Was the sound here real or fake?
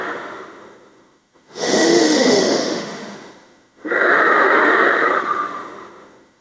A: fake